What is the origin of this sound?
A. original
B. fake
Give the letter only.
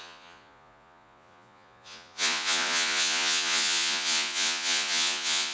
B